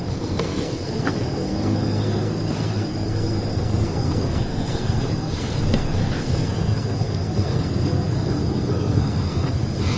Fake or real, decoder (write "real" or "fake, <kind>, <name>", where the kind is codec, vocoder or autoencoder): fake, codec, SNAC